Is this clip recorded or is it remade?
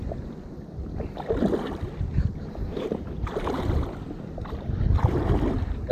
remade